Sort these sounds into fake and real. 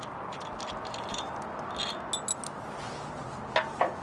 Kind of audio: real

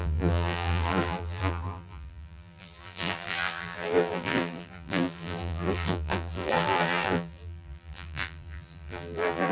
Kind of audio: fake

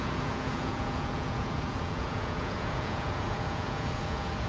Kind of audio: fake